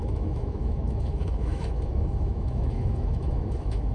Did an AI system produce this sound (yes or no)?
yes